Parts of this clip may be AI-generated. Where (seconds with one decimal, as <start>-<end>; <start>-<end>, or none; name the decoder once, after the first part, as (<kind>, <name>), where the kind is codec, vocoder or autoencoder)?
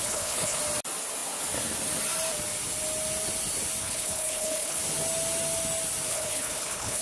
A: 0.0-0.6 (codec, HILCodec); 3.8-4.8; 6.1-7.0